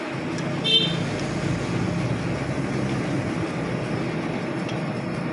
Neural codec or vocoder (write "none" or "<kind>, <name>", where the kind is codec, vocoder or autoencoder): none